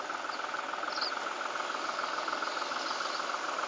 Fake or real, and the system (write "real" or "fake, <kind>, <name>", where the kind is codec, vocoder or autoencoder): real